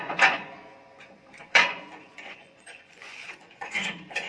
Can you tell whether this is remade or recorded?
remade